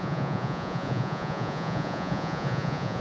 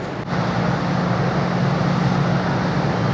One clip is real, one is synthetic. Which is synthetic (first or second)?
first